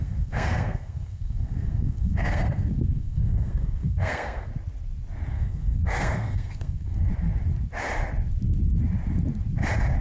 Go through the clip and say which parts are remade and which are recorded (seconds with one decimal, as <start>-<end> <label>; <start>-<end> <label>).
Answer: 0.0-4.5 remade; 4.5-5.3 recorded; 5.3-7.1 remade; 7.1-10.0 recorded